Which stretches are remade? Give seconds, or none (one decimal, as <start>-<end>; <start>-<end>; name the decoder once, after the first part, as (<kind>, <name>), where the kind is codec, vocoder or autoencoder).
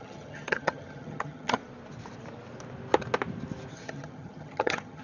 0.0-1.6 (vocoder, HiFi-GAN); 3.7-5.0